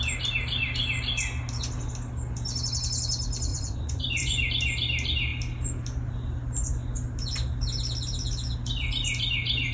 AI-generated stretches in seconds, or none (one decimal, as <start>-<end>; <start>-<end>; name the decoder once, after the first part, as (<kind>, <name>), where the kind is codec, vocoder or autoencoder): 3.5-4.5 (vocoder, Vocos)